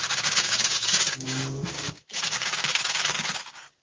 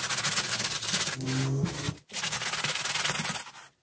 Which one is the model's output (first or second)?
first